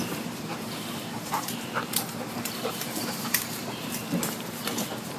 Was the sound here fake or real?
fake